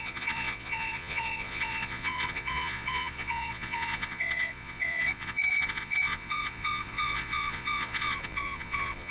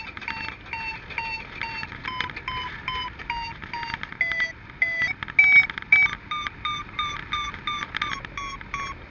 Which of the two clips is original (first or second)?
second